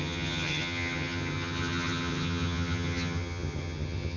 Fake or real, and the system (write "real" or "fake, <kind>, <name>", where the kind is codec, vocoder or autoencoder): fake, vocoder, HiFi-GAN